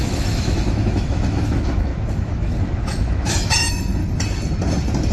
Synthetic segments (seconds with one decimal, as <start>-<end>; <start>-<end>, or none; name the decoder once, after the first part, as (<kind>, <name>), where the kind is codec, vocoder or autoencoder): 0.0-4.0 (autoencoder, DAC-VAE)